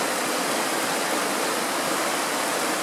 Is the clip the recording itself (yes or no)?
yes